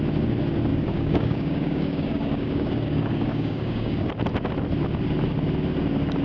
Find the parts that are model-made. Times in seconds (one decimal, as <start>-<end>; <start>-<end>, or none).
0.7-4.1